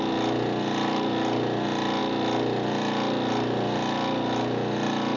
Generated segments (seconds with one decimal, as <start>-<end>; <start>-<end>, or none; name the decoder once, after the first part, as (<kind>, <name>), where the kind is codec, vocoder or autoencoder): none